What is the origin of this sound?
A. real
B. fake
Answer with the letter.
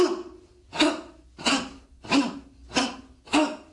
A